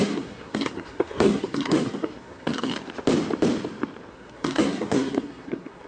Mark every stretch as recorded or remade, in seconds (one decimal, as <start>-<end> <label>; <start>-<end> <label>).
0.0-2.7 remade; 2.7-4.1 recorded; 4.1-5.9 remade